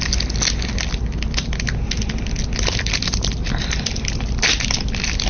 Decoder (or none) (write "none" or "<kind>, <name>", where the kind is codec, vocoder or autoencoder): none